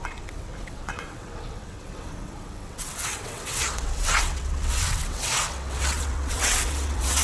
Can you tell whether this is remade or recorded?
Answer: remade